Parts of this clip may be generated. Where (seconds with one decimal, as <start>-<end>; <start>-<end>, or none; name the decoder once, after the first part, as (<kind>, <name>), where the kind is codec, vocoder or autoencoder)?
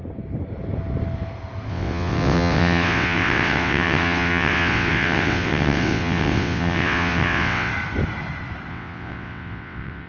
1.7-7.7 (vocoder, WaveNeXt); 8.7-10.1